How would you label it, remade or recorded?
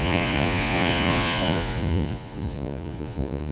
remade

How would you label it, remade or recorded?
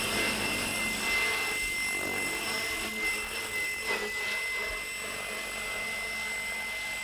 recorded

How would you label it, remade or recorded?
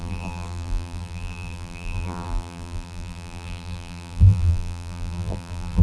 remade